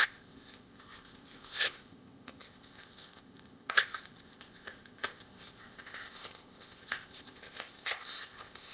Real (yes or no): no